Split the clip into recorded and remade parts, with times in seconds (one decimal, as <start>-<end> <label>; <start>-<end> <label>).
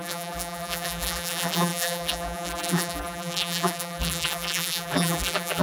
0.0-5.6 remade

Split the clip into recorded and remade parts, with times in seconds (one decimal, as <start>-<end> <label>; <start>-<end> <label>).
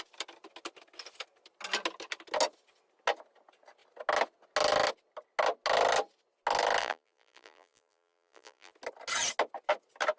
0.0-6.8 recorded; 6.8-8.7 remade; 8.7-10.2 recorded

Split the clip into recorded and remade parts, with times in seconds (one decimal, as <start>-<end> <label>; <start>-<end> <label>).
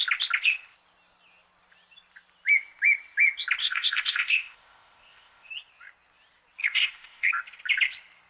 0.0-3.6 recorded; 3.6-5.5 remade; 5.5-6.6 recorded; 6.6-7.3 remade; 7.3-8.3 recorded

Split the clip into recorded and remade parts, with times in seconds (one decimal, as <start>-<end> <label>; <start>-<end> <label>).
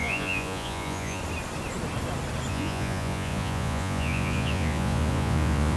0.0-1.2 remade; 1.2-2.5 recorded; 2.5-5.8 remade